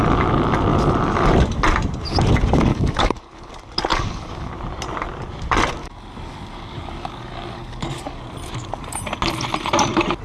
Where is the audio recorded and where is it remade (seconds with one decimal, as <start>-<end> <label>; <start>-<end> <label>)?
0.0-2.7 recorded; 2.7-3.5 remade; 3.5-3.9 recorded; 3.9-4.5 remade; 4.5-5.8 recorded; 5.8-8.2 remade; 8.2-10.2 recorded